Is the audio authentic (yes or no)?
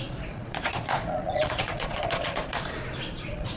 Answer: no